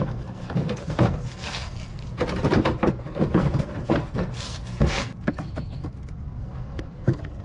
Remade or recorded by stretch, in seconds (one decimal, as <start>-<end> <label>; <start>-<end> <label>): 0.0-2.0 remade; 2.0-2.9 recorded; 2.9-7.4 remade